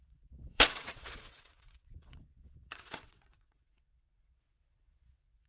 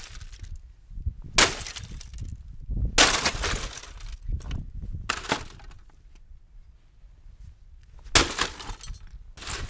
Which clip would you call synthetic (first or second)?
first